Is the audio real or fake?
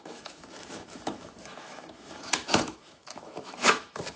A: fake